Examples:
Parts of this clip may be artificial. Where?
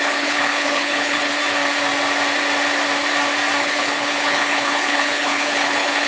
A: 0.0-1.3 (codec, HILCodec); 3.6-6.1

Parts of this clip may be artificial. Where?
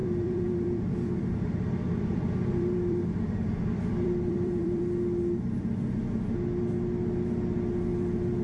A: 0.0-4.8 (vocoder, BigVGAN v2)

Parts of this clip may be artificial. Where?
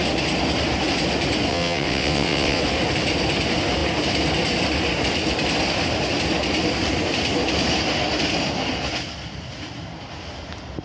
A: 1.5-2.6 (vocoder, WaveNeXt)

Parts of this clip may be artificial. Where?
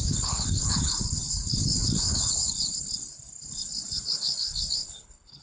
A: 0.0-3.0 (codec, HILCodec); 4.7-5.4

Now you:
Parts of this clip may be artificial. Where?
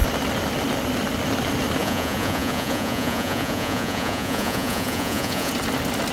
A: 1.8-5.5 (vocoder, Vocos)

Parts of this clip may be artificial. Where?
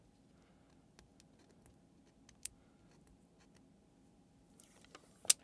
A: none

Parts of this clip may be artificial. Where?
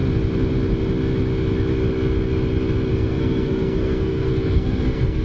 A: 2.9-5.2 (codec, SNAC)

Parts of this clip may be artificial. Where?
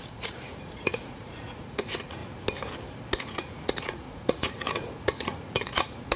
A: 0.0-2.2 (vocoder, Vocos); 3.2-6.2